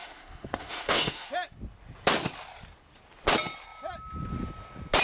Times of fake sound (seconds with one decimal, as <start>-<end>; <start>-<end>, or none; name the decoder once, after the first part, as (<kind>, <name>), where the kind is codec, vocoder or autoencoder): 0.0-1.3 (autoencoder, DAC-VAE)